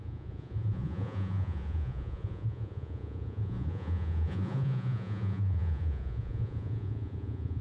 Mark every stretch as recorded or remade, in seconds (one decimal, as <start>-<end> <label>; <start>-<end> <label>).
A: 0.0-7.6 remade